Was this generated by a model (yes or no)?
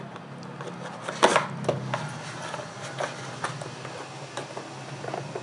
no